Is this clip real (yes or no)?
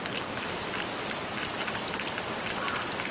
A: yes